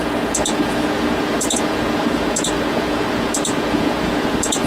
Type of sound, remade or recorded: remade